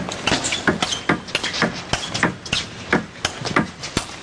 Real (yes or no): yes